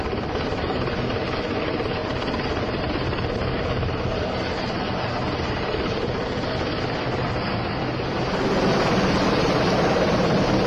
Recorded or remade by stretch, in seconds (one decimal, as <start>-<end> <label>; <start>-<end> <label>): 0.0-10.7 recorded